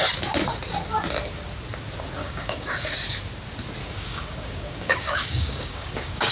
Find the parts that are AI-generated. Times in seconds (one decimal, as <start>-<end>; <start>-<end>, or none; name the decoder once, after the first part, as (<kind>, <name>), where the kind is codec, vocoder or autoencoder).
2.2-2.9 (codec, DAC); 3.8-6.3